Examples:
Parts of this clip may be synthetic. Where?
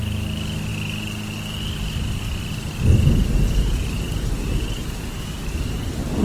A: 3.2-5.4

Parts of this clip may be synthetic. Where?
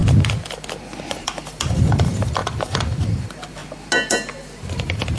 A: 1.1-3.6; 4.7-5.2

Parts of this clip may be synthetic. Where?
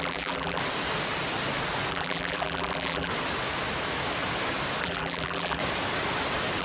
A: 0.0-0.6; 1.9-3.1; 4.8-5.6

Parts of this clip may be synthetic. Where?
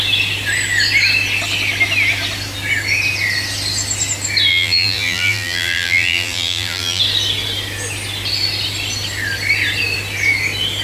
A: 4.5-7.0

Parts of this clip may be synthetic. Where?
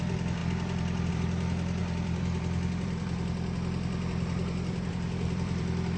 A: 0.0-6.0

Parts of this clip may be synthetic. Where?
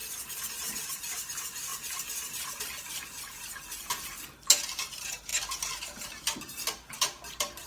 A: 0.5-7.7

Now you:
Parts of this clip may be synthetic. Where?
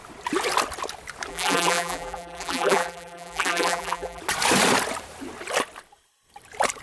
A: 1.3-4.2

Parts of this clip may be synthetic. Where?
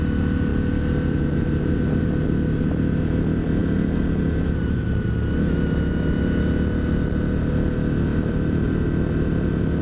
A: 3.6-5.1; 8.1-8.7